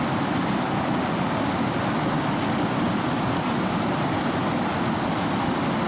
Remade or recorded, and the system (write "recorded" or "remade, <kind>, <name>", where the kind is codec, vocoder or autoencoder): recorded